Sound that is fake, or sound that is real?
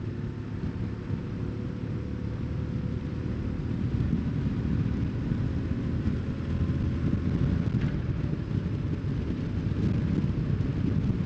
real